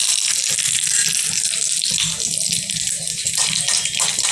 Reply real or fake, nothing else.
real